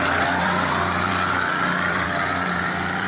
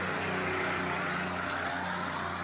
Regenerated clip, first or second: first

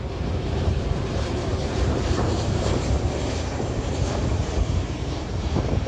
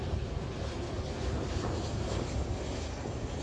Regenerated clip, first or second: first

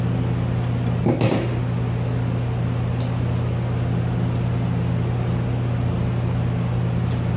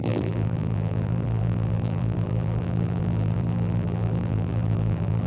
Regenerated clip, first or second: second